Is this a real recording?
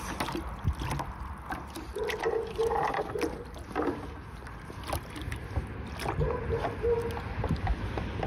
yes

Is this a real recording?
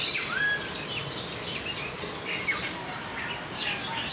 yes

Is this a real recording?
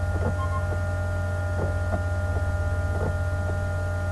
yes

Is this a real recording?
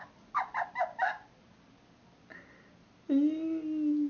yes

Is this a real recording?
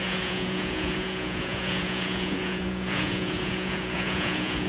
no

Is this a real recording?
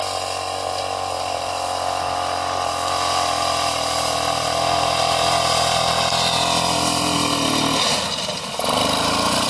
yes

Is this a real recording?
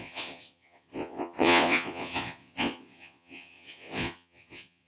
no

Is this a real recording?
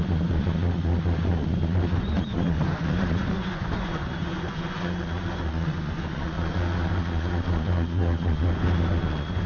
no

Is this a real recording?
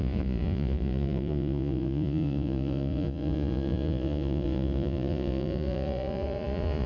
no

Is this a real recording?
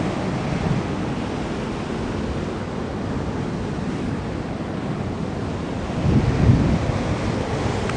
yes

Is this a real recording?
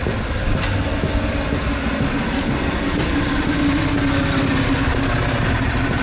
yes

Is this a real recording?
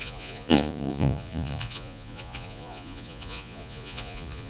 no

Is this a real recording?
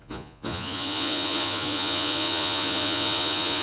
no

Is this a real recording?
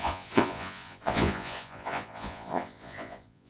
no